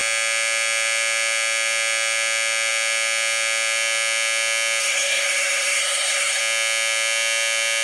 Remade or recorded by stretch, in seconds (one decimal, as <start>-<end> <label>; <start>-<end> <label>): 0.0-4.8 recorded; 4.8-6.4 remade; 6.4-7.8 recorded